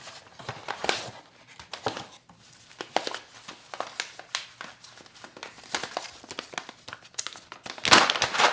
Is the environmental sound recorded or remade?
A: recorded